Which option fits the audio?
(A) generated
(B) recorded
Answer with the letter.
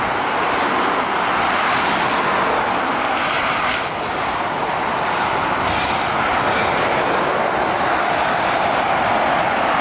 B